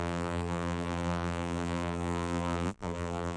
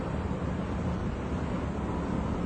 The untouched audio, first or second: second